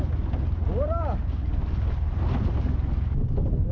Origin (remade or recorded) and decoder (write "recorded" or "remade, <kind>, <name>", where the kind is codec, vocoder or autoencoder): recorded